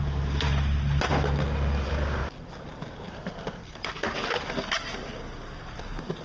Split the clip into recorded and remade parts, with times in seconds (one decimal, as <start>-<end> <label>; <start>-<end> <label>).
0.0-6.2 recorded